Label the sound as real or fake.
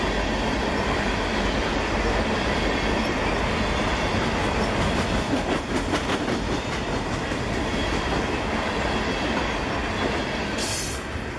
real